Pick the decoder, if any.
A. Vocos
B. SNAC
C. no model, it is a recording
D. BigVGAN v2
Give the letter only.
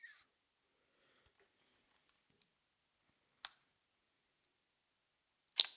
C